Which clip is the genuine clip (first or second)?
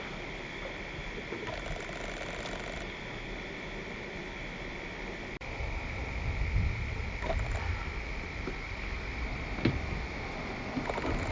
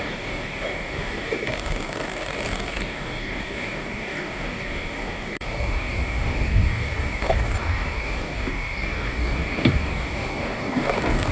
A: first